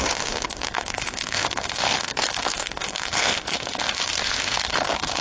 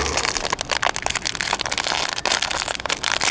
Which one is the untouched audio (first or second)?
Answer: second